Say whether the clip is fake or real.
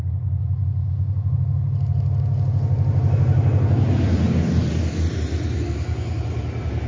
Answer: real